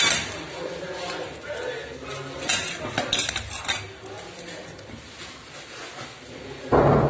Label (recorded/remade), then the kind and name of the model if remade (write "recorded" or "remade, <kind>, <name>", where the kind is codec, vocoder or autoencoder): recorded